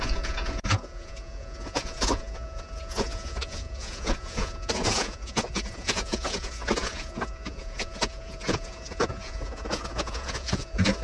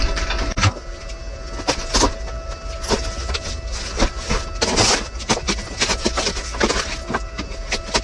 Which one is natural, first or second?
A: second